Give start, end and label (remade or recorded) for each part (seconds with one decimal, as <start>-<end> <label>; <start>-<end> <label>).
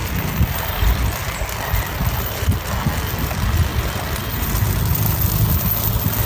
0.0-2.7 remade; 2.7-3.7 recorded; 3.7-4.5 remade; 4.5-6.3 recorded